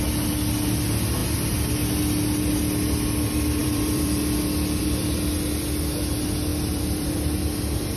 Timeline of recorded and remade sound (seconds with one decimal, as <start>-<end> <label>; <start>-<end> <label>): 0.0-3.6 recorded; 3.6-4.2 remade; 4.2-6.5 recorded; 6.5-7.1 remade; 7.1-8.0 recorded